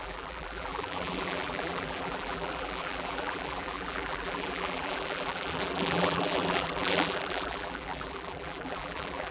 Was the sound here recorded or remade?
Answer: remade